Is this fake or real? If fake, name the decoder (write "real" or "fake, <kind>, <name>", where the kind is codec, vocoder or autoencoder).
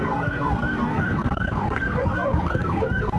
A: fake, codec, SNAC